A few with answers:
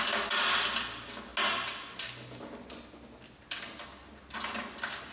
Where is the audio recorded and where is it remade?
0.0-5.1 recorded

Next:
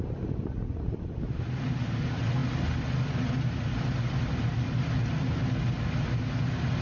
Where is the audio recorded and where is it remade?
0.0-6.8 recorded

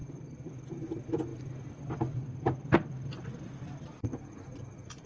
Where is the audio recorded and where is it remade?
0.0-5.1 recorded

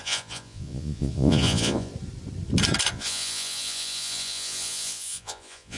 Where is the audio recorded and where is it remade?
0.0-1.9 remade; 1.9-2.9 recorded; 2.9-5.8 remade

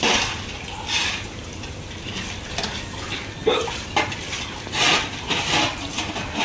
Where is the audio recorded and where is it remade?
0.0-6.4 recorded

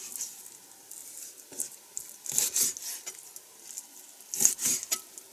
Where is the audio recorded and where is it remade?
0.0-5.3 recorded

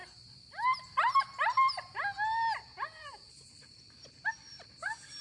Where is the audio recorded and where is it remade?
0.0-2.7 recorded; 2.7-3.3 remade; 3.3-5.2 recorded

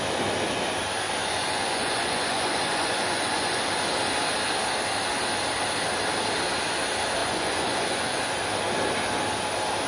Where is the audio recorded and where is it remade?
0.0-1.2 recorded; 1.2-3.6 remade; 3.6-7.2 recorded; 7.2-8.2 remade; 8.2-9.9 recorded